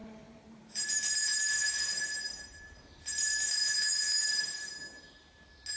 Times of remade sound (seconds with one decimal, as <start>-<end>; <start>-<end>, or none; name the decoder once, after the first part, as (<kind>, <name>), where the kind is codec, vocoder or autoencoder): 0.0-3.5 (vocoder, BigVGAN v2); 4.2-4.7

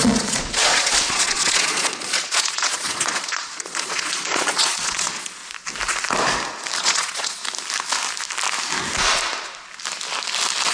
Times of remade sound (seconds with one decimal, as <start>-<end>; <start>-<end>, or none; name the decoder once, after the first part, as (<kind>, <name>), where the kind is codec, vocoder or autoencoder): 0.0-5.4 (vocoder, Vocos); 6.8-7.4

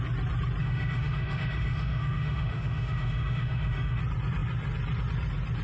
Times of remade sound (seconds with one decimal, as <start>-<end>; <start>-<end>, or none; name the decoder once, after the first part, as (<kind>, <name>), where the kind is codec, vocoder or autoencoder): 0.6-4.0 (autoencoder, DAC-VAE)